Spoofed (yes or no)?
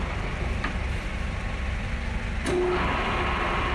no